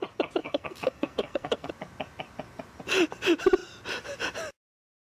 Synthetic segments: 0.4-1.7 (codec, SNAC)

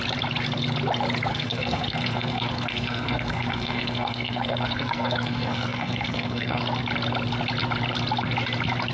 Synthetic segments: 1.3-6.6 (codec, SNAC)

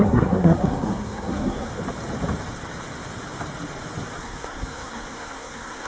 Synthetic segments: 0.0-1.7 (codec, SNAC); 4.2-5.9

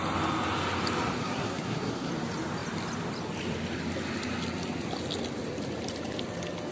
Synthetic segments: 1.2-2.1 (codec, SNAC)